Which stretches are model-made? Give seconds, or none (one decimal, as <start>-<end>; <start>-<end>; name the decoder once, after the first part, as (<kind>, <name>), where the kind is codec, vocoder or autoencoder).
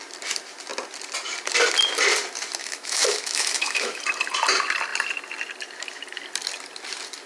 2.6-4.0 (autoencoder, DAC-VAE)